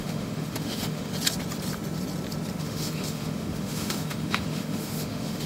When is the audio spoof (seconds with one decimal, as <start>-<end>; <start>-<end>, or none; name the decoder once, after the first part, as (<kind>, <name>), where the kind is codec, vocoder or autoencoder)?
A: 0.0-1.1 (autoencoder, DAC-VAE); 2.6-5.5